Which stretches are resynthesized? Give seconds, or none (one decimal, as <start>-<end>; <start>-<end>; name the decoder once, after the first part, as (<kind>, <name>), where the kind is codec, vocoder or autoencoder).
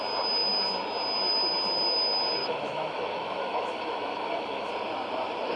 2.4-4.7 (autoencoder, DAC-VAE)